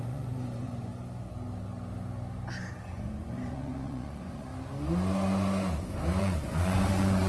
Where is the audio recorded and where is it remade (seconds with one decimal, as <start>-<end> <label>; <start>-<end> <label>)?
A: 0.0-0.9 remade; 0.9-2.9 recorded; 2.9-4.5 remade; 4.5-6.2 recorded; 6.2-7.3 remade